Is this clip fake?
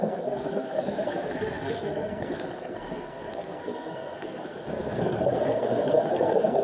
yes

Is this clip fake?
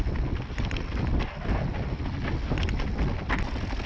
no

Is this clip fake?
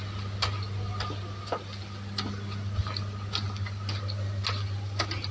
no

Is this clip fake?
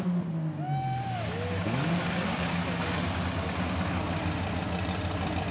no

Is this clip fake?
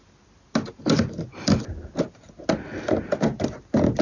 no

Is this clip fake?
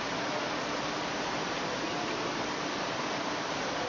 no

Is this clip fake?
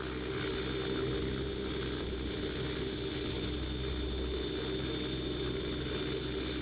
no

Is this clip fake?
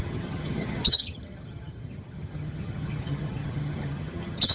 yes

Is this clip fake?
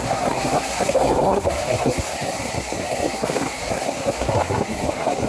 yes